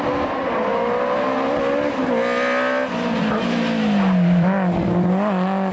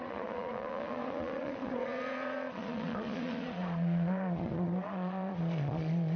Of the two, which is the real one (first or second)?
first